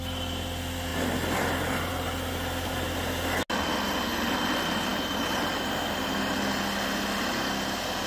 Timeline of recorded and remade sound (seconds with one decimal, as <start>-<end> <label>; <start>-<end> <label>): 0.0-8.1 recorded